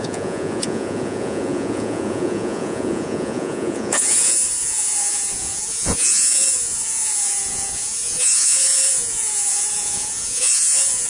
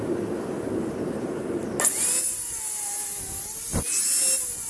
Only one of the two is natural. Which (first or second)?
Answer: second